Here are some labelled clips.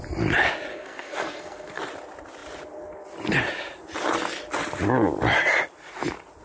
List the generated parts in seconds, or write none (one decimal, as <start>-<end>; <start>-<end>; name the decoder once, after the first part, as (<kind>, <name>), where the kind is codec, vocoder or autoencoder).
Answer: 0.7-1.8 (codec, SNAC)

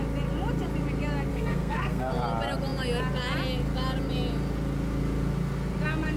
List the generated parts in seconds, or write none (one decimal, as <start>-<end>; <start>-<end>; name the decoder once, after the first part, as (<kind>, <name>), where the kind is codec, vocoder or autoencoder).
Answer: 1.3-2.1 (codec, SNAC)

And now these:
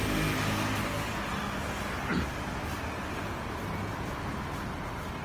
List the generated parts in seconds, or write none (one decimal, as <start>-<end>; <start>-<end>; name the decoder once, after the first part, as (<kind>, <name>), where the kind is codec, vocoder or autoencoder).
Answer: none